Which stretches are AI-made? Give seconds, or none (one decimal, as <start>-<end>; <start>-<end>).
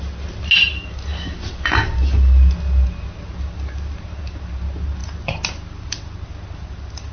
none